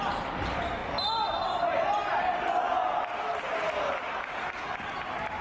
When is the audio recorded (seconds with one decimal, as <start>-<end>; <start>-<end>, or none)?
0.0-5.4